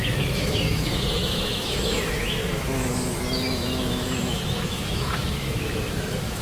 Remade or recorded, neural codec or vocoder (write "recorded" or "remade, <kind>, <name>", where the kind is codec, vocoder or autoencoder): remade, autoencoder, DAC-VAE